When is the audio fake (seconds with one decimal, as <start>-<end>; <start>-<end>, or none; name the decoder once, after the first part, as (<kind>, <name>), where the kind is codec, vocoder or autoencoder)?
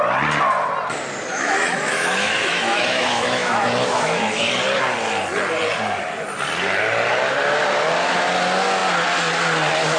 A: 1.3-4.5 (autoencoder, DAC-VAE)